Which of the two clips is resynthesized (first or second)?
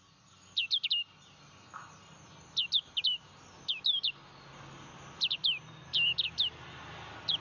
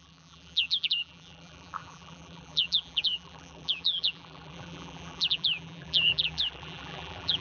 second